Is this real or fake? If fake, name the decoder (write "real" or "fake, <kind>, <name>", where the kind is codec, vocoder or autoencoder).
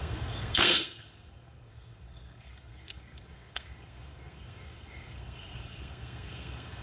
fake, codec, SNAC